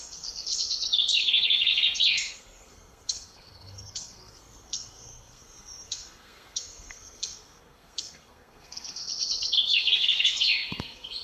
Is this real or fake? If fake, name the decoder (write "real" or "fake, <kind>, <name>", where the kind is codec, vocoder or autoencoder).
fake, codec, SNAC